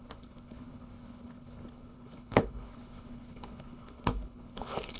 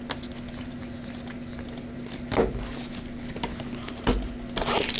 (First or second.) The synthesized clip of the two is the first